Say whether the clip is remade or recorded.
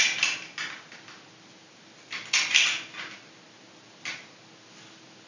recorded